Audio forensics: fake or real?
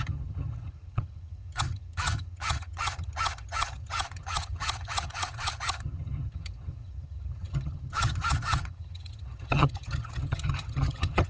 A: fake